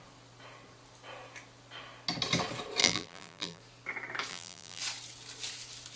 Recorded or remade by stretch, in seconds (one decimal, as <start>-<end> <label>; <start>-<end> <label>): 0.0-2.8 recorded; 2.8-3.6 remade; 3.6-4.3 recorded; 4.3-4.8 remade; 4.8-6.0 recorded